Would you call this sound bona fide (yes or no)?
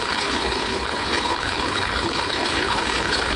no